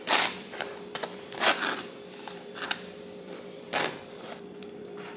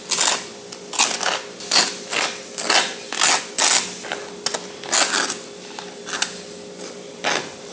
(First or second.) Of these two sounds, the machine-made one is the first